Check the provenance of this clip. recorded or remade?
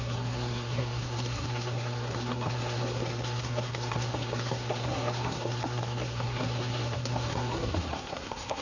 remade